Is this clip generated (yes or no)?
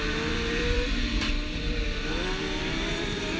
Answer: yes